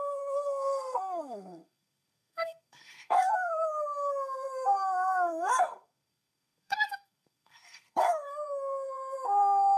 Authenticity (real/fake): fake